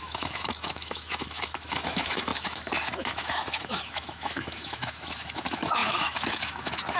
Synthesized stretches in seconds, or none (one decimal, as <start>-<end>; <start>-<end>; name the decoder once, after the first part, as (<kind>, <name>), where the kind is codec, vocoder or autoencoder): 0.0-7.0 (autoencoder, DAC-VAE)